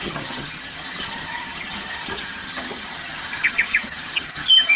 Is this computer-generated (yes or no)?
yes